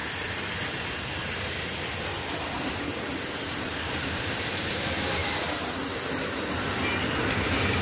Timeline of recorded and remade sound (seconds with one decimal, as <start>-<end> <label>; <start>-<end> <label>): 0.0-7.8 recorded